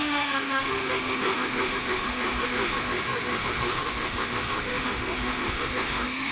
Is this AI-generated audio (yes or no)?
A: yes